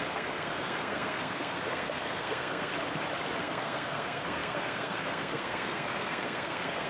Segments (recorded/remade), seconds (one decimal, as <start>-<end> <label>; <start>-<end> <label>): 0.0-2.7 remade; 2.7-3.4 recorded; 3.4-6.9 remade